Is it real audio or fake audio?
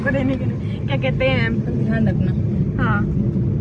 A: real